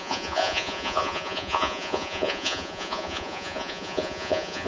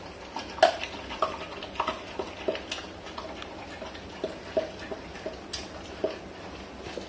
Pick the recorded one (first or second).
second